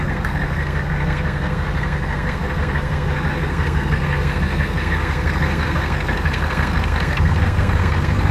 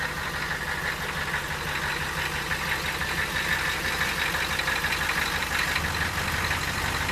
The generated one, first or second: first